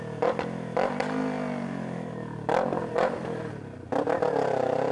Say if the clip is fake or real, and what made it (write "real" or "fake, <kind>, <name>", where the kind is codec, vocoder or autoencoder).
real